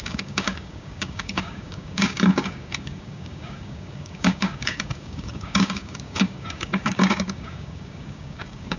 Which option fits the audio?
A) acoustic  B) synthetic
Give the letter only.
B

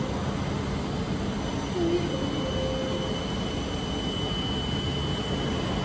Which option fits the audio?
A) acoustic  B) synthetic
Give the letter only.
A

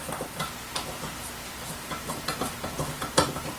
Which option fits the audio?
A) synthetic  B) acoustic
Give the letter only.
B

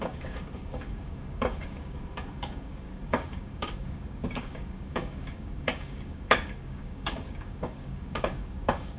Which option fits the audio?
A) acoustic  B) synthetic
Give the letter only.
B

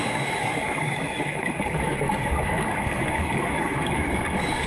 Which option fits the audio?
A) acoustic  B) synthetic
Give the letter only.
B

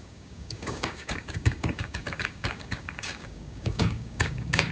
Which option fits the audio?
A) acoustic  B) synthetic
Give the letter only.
B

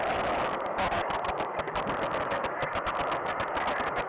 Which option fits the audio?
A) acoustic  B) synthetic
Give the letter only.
A